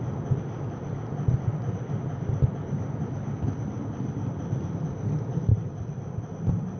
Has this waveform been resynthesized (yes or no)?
no